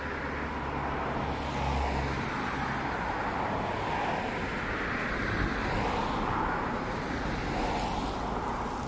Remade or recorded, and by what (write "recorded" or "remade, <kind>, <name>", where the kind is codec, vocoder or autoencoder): recorded